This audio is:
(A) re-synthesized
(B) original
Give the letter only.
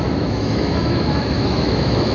A